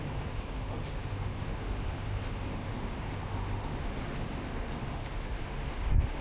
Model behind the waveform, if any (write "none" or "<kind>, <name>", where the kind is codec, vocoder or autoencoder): autoencoder, DAC-VAE